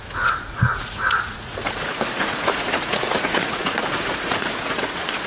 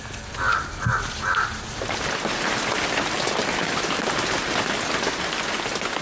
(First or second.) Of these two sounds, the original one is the second